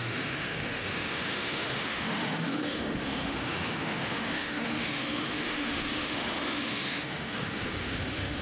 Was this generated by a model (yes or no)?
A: yes